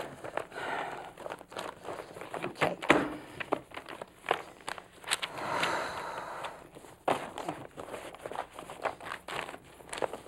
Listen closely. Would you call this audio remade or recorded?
recorded